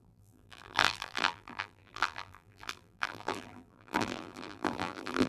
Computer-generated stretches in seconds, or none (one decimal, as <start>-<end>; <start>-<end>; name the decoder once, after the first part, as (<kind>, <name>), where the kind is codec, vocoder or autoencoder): 0.0-5.3 (vocoder, BigVGAN v2)